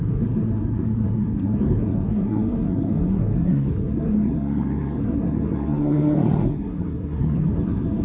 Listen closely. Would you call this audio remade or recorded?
remade